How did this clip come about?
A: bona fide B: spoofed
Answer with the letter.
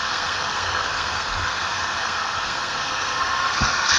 B